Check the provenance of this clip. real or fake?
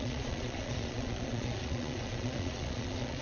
fake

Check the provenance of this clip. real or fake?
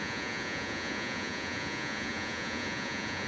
fake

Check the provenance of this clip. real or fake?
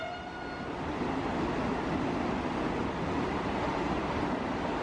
real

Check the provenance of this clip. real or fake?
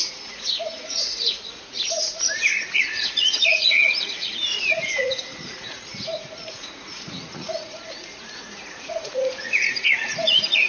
fake